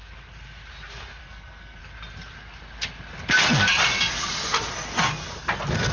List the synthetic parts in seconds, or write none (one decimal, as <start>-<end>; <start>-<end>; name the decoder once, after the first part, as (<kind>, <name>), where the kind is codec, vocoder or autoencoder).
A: 1.2-1.8 (codec, SNAC)